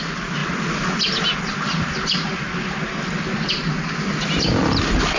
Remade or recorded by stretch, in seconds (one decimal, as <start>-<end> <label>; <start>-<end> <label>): 0.0-5.2 remade